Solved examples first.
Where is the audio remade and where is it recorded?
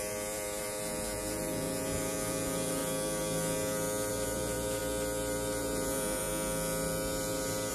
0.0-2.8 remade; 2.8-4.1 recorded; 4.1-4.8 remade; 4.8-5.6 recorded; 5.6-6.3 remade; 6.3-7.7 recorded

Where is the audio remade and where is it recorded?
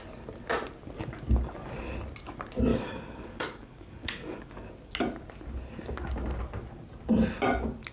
0.0-2.7 recorded; 2.7-4.7 remade; 4.7-7.9 recorded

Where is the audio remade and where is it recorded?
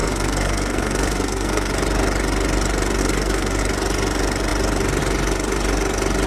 0.0-1.7 remade; 1.7-3.0 recorded; 3.0-3.6 remade; 3.6-6.3 recorded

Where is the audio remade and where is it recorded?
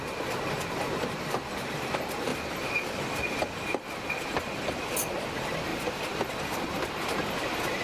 0.0-7.8 recorded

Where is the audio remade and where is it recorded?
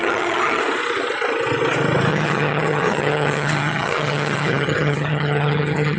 0.0-0.6 remade; 0.6-2.1 recorded; 2.1-6.0 remade